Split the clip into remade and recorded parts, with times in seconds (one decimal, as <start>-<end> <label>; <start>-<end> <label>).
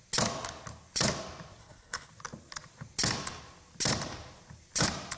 0.0-1.6 recorded; 1.6-2.1 remade; 2.1-5.2 recorded